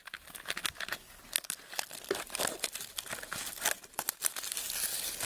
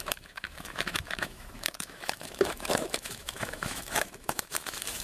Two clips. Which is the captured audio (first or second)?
first